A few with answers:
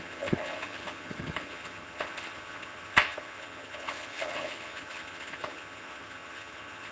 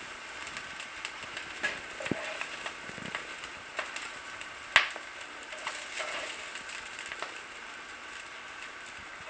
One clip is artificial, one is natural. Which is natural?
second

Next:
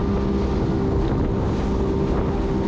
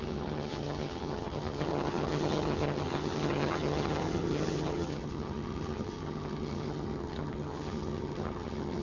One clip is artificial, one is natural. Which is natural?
first